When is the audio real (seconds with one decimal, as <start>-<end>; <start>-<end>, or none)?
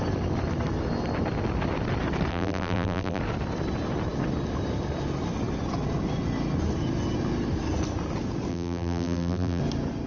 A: 0.0-2.3; 3.2-8.5; 9.6-10.1